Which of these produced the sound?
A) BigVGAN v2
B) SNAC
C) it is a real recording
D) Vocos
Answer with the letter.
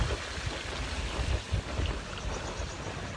C